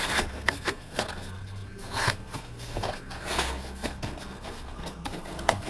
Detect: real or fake fake